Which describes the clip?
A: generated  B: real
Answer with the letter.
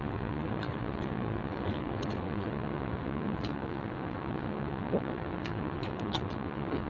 A